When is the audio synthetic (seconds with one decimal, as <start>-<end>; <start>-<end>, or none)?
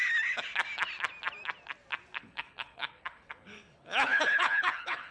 2.2-5.1